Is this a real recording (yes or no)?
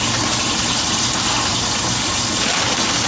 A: yes